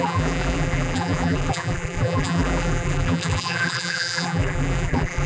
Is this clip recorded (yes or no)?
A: no